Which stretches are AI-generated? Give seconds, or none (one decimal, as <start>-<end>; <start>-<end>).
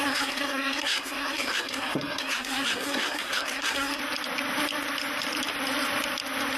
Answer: 0.0-4.0